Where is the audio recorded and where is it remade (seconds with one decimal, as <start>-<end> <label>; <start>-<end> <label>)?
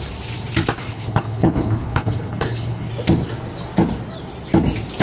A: 0.0-0.8 recorded; 0.8-2.9 remade; 2.9-5.0 recorded